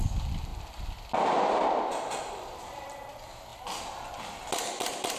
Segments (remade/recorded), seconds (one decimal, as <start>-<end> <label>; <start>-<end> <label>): 0.0-5.2 recorded